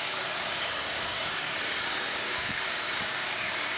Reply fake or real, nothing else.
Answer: fake